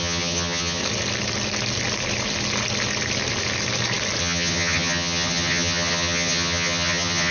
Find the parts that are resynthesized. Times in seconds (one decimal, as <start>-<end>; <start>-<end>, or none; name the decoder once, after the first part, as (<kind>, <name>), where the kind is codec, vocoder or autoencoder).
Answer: 0.0-0.8 (vocoder, HiFi-GAN); 4.2-7.3